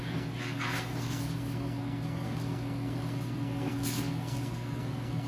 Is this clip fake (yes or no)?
yes